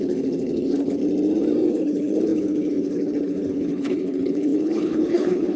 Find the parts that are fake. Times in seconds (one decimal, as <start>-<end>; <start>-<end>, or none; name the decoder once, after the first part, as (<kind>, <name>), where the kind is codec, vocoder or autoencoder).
0.0-1.0 (codec, HILCodec); 1.7-5.6